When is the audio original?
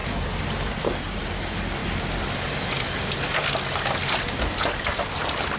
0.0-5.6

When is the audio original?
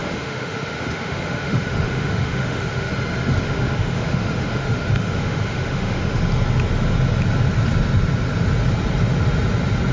2.9-3.4; 6.2-9.9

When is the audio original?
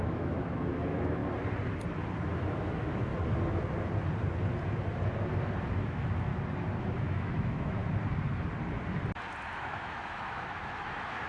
1.2-2.5; 3.1-5.8; 6.3-7.0; 7.8-9.6